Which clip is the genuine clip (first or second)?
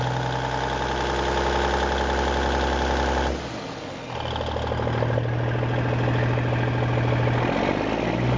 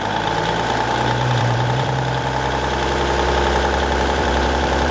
first